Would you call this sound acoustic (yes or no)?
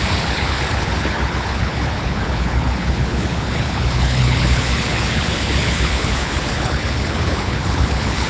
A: no